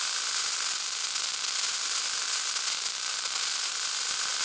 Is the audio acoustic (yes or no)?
yes